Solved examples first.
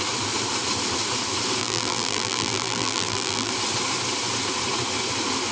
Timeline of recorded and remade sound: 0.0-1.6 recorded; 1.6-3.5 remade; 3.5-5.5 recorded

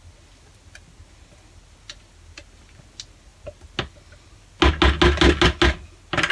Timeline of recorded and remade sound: 0.0-6.3 recorded

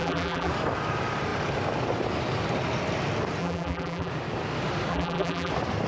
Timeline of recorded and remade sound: 0.0-0.5 remade; 0.5-3.4 recorded; 3.4-4.1 remade; 4.1-4.9 recorded; 4.9-5.5 remade; 5.5-5.9 recorded

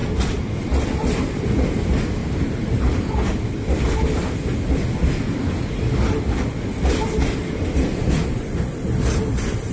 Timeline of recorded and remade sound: 0.0-1.3 remade; 1.3-2.2 recorded; 2.2-3.4 remade; 3.4-9.7 recorded

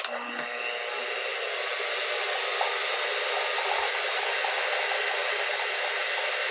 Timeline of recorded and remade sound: 0.0-6.5 recorded

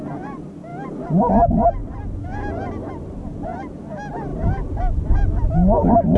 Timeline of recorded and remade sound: 0.0-0.7 recorded; 0.7-1.3 remade; 1.3-6.2 recorded

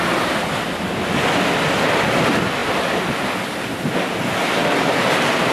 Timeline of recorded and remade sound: 0.0-5.5 recorded

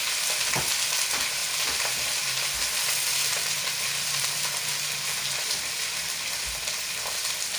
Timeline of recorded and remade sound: 0.0-7.6 recorded